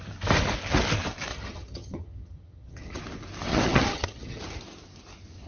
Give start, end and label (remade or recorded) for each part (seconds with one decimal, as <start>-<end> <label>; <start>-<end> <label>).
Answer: 0.0-1.3 recorded; 1.3-3.0 remade; 3.0-3.5 recorded; 3.5-4.4 remade; 4.4-5.5 recorded